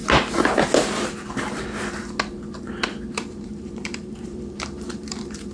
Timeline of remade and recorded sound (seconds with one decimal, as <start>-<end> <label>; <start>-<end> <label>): 0.0-3.3 recorded; 3.3-5.5 remade